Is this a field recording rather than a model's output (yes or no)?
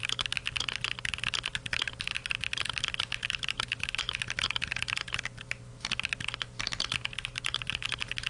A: yes